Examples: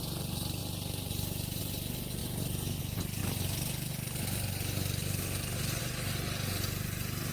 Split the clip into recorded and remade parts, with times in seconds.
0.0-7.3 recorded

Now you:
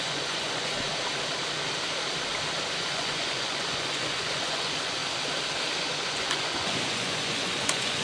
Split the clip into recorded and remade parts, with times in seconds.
0.0-0.9 remade; 0.9-2.8 recorded; 2.8-5.0 remade; 5.0-5.8 recorded; 5.8-8.0 remade

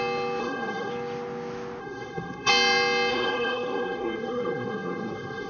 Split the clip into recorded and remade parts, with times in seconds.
0.0-0.4 recorded; 0.4-0.9 remade; 0.9-1.8 recorded; 1.8-2.5 remade; 2.5-3.1 recorded; 3.1-5.5 remade

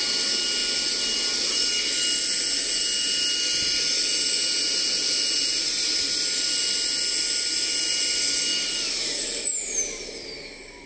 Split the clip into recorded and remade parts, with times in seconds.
0.0-10.9 recorded

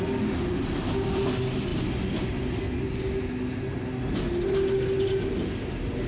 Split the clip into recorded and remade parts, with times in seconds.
0.0-6.1 recorded

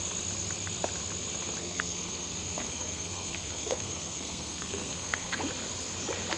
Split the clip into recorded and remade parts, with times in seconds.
0.0-1.6 recorded; 1.6-5.4 remade; 5.4-6.4 recorded